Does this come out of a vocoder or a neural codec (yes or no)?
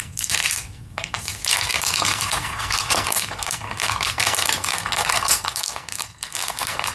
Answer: yes